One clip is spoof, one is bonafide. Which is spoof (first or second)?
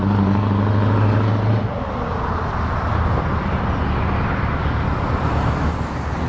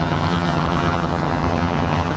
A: second